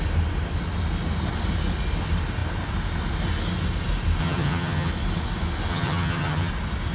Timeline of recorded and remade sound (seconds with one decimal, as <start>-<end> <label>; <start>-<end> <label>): 0.0-4.2 recorded; 4.2-4.9 remade; 4.9-5.7 recorded; 5.7-6.5 remade; 6.5-6.9 recorded